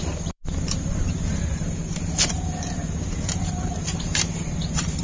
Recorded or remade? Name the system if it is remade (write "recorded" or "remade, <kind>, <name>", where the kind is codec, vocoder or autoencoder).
remade, vocoder, BigVGAN v2